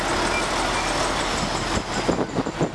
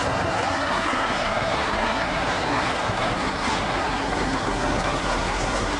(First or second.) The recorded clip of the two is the first